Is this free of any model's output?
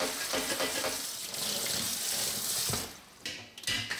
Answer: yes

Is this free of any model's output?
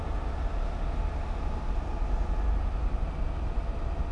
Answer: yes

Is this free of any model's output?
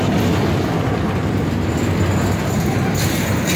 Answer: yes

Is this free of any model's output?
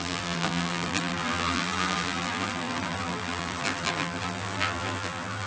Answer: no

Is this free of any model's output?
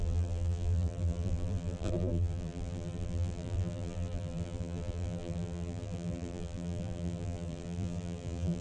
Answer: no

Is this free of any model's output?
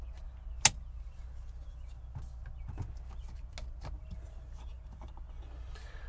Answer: yes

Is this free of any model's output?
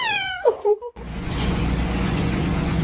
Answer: no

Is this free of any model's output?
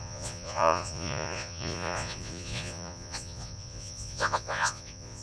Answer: no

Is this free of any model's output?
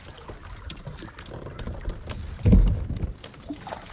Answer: yes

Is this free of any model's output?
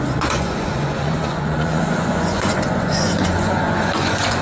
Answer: no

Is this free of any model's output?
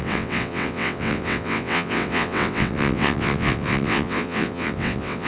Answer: no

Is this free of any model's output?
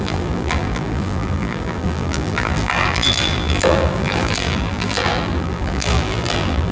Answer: no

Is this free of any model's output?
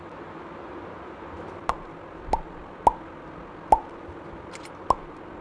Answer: yes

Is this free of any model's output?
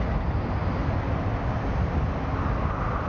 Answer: yes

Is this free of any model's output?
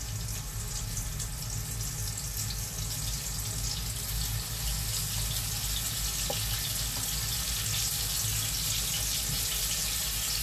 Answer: yes